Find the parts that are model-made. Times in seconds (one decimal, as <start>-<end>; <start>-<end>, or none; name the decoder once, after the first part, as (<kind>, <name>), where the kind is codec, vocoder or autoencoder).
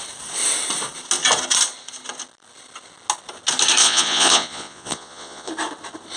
3.8-5.5 (vocoder, Vocos)